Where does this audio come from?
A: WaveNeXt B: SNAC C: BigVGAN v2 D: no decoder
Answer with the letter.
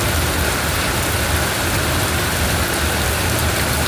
D